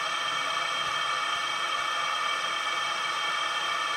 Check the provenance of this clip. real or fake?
fake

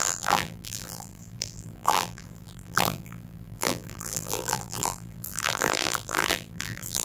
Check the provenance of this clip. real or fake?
fake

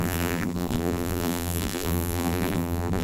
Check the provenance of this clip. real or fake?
fake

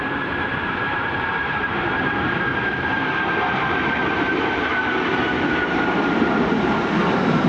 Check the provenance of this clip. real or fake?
fake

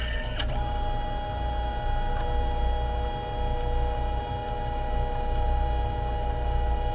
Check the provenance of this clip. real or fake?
real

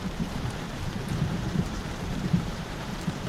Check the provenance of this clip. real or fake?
fake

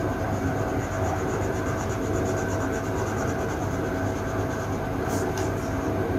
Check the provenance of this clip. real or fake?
real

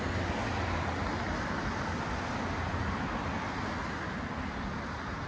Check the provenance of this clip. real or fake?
real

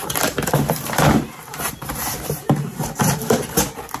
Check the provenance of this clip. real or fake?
fake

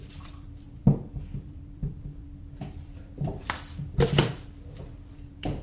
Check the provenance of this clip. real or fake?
fake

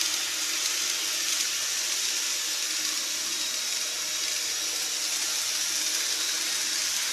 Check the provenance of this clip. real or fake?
real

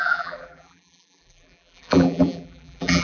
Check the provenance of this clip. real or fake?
fake